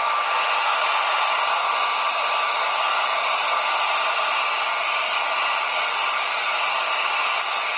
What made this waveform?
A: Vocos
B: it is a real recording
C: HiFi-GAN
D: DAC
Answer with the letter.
B